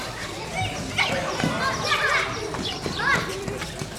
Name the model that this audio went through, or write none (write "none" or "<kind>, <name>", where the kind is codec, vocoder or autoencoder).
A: none